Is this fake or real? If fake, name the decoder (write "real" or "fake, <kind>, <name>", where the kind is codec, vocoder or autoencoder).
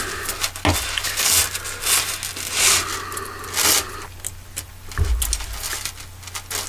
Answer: real